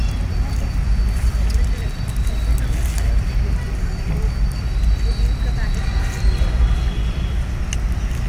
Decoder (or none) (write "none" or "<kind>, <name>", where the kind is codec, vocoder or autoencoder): none